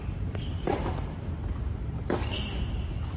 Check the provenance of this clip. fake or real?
fake